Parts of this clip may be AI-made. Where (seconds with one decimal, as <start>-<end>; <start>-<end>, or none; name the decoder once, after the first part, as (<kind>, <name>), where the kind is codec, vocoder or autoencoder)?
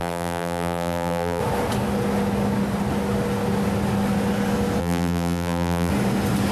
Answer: 0.0-1.4 (vocoder, BigVGAN v2); 4.8-5.9